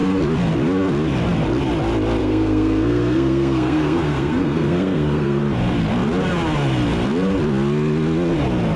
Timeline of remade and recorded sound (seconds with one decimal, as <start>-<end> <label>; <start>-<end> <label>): 0.0-2.2 recorded; 2.2-5.4 remade; 5.4-8.8 recorded